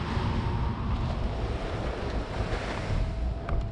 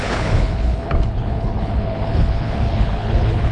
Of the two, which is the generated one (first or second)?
second